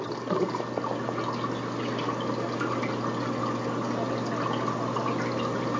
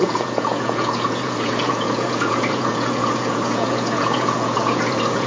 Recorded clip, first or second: first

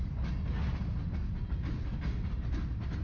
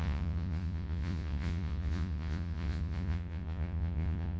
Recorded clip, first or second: first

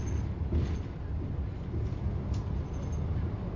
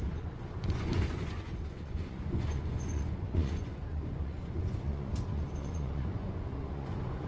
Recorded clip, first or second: first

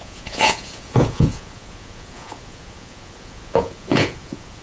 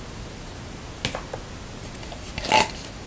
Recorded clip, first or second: second